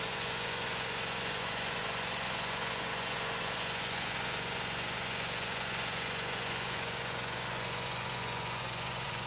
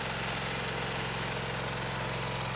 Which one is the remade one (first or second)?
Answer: first